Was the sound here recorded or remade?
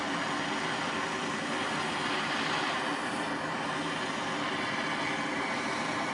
recorded